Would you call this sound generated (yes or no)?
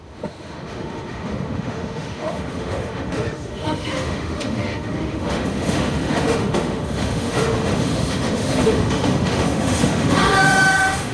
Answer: yes